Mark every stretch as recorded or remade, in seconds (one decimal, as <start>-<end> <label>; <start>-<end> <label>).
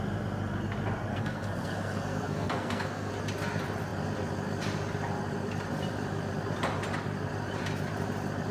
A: 0.0-1.1 recorded; 1.1-3.1 remade; 3.1-8.5 recorded